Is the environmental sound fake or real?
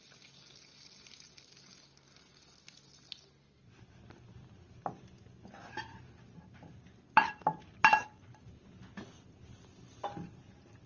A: real